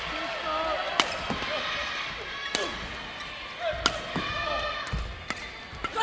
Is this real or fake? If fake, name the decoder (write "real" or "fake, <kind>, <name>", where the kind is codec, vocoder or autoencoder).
real